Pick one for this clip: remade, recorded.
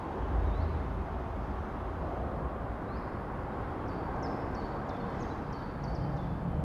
recorded